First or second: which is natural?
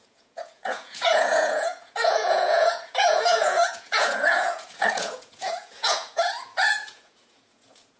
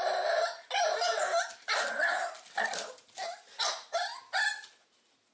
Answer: second